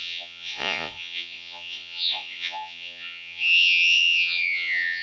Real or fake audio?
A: fake